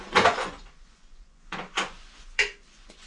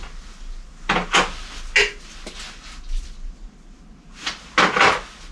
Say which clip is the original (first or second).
second